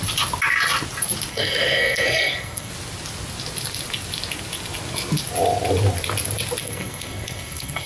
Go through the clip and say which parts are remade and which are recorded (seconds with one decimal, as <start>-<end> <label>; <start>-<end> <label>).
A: 0.0-1.3 recorded; 1.3-2.7 remade; 2.7-6.6 recorded; 6.6-7.9 remade